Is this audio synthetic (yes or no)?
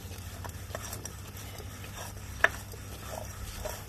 no